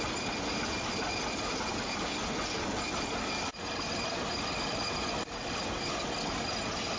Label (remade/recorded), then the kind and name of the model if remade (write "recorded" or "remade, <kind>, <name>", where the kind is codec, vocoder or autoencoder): recorded